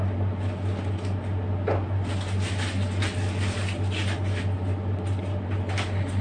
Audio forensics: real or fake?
real